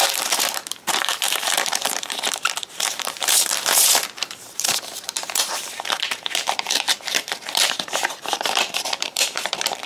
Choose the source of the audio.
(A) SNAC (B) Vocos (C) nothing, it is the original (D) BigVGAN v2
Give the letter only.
D